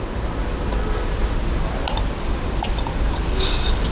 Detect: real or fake real